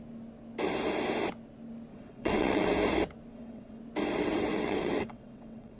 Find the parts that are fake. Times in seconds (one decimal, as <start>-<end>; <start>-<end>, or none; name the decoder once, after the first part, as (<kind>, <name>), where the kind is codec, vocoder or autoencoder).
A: 1.9-2.7 (vocoder, WaveNeXt); 3.3-3.8; 4.5-5.8